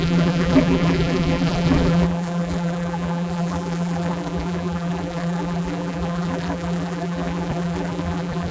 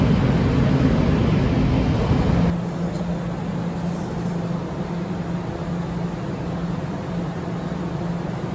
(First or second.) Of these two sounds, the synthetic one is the first